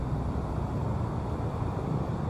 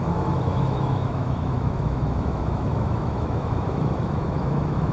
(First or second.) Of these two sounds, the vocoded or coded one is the second